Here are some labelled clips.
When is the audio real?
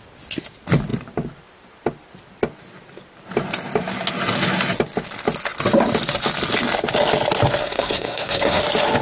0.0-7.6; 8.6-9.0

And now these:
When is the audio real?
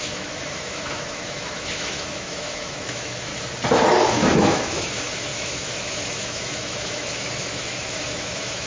3.3-4.1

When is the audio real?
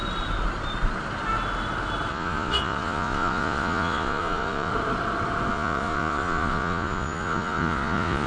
0.0-2.1; 4.7-5.5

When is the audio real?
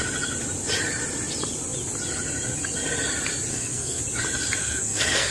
0.0-3.5; 4.0-4.6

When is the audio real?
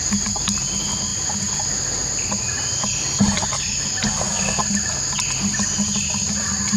0.0-6.8